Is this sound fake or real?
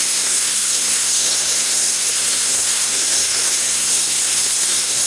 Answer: fake